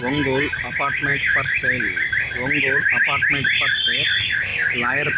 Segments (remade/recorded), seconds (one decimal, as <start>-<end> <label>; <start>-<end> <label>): 0.0-5.2 recorded